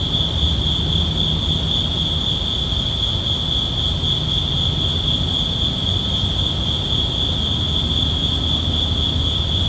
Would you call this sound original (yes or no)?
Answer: yes